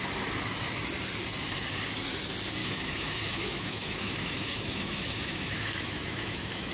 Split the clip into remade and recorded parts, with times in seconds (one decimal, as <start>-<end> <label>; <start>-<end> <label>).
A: 0.0-2.6 recorded; 2.6-6.7 remade